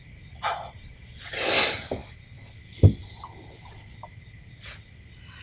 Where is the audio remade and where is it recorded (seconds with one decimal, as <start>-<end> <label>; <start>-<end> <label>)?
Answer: 0.0-5.4 recorded